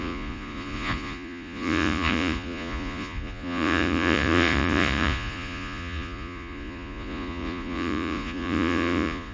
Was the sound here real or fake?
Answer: fake